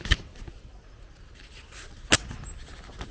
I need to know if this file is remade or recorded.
recorded